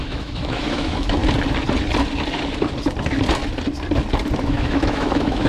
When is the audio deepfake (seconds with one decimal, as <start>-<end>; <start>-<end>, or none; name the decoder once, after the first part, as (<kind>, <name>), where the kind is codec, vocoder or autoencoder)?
0.0-1.2 (autoencoder, DAC-VAE); 4.4-5.5